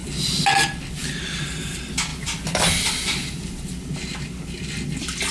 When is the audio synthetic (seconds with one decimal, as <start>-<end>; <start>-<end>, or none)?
none